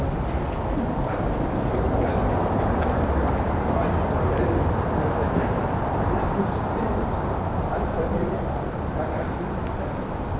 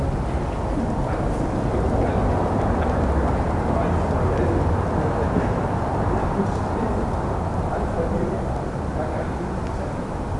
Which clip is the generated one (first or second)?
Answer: first